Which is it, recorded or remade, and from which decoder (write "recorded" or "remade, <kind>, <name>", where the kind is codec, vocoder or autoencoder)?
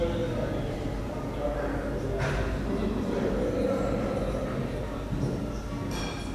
recorded